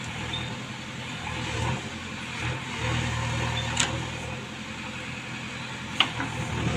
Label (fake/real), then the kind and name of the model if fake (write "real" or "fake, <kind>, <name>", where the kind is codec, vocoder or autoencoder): real